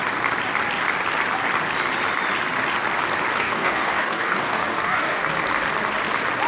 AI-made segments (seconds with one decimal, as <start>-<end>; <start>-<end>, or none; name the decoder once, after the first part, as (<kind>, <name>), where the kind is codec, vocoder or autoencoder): 3.3-5.2 (codec, DAC)